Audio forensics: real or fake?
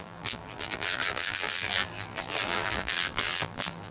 fake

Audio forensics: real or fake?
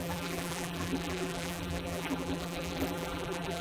fake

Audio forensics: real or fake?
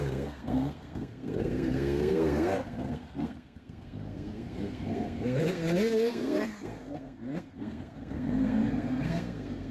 fake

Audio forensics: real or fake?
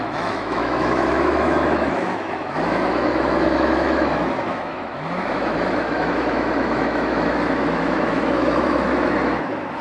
fake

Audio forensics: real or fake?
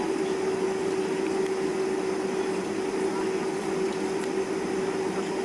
real